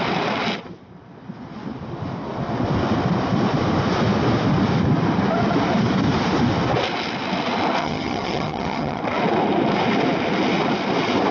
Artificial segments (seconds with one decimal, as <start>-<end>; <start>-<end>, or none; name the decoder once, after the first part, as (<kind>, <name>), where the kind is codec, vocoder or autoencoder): 7.8-9.0 (vocoder, HiFi-GAN)